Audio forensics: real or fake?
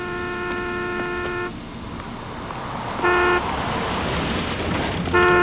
real